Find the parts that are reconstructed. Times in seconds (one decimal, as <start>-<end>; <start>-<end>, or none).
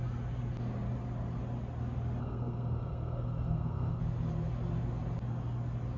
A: 2.2-4.0